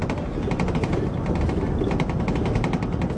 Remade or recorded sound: recorded